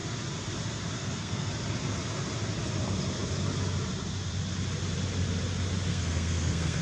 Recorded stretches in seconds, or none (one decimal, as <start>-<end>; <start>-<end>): 0.0-1.0; 1.5-5.9